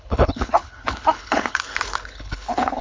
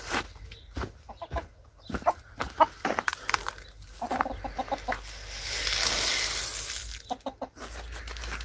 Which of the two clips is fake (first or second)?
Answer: first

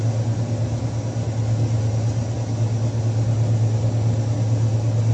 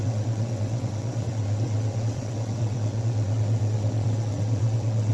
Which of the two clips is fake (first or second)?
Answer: second